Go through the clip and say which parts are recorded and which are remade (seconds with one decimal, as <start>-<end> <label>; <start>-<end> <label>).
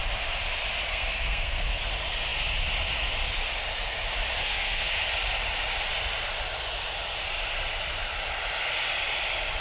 0.0-0.9 recorded; 0.9-1.9 remade; 1.9-4.4 recorded; 4.4-4.9 remade; 4.9-9.6 recorded